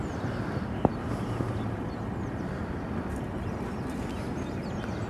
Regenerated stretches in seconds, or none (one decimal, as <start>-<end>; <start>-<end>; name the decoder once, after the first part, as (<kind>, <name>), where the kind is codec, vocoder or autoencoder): none